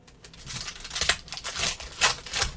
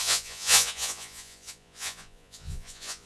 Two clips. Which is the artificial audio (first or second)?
second